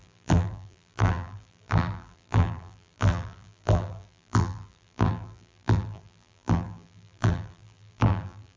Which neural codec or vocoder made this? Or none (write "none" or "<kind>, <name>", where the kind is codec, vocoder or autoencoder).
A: vocoder, BigVGAN v2